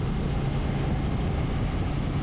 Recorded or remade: recorded